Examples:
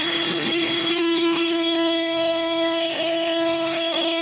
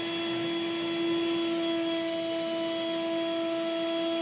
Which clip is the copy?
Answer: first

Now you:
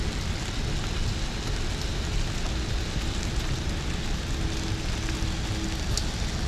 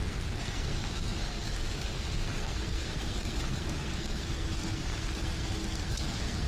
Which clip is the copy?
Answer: second